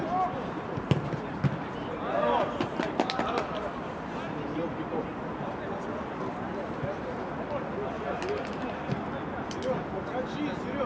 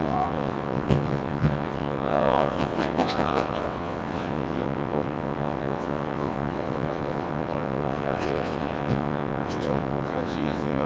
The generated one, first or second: second